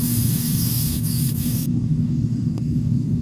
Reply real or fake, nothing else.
fake